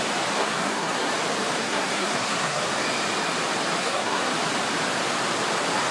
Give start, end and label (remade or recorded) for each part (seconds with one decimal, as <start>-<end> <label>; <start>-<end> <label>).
0.0-0.4 recorded; 0.4-1.1 remade; 1.1-1.6 recorded; 1.6-2.6 remade; 2.6-3.8 recorded; 3.8-4.3 remade; 4.3-5.9 recorded